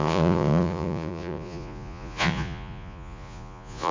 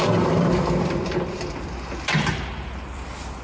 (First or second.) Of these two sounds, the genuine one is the second